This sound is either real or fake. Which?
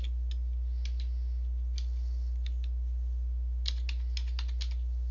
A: real